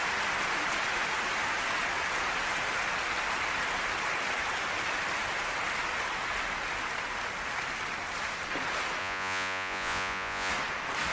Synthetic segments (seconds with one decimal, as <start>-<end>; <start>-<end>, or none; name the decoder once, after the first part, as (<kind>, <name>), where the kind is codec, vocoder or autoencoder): 9.0-10.5 (vocoder, Vocos)